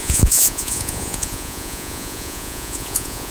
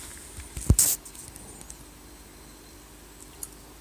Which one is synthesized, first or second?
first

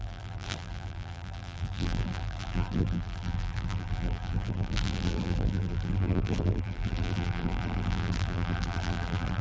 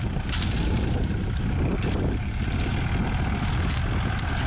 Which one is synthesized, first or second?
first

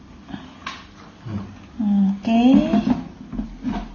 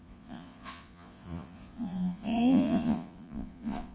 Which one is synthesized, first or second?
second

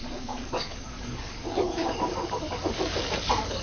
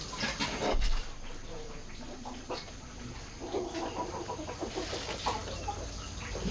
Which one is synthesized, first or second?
first